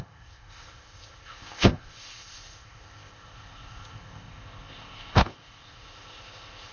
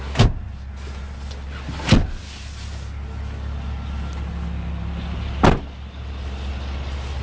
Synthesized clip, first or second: first